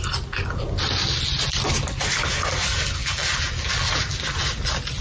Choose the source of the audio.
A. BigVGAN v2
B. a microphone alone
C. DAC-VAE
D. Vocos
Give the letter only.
B